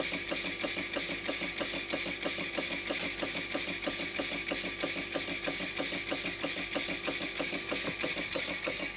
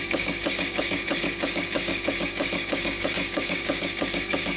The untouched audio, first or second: first